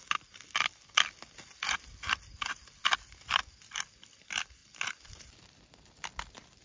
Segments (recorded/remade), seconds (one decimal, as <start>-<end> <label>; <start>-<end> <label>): 0.0-4.6 recorded; 4.6-5.6 remade; 5.6-6.6 recorded